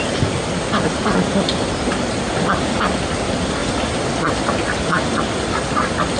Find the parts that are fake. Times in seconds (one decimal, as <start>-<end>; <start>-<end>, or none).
none